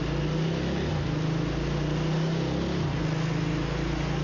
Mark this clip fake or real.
real